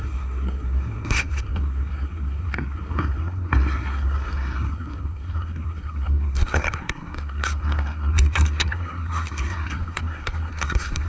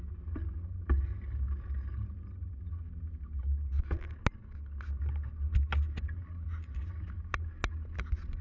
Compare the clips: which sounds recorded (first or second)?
second